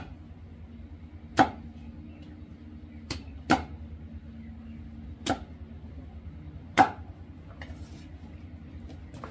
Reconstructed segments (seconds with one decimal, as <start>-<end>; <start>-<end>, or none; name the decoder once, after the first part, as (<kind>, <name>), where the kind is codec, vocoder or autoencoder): none